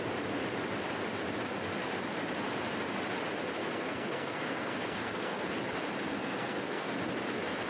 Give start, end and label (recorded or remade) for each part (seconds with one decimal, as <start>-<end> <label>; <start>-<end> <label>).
0.0-3.6 recorded; 3.6-5.4 remade; 5.4-6.2 recorded; 6.2-7.0 remade; 7.0-7.7 recorded